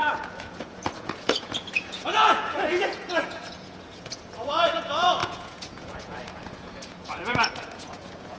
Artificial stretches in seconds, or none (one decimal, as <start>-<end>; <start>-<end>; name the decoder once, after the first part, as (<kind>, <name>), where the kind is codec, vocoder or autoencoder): 0.0-8.4 (vocoder, Vocos)